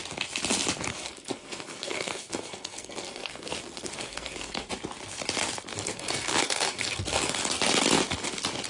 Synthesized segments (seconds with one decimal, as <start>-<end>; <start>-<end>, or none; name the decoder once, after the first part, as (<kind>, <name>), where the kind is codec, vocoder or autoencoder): 0.9-4.7 (codec, SNAC); 5.7-7.4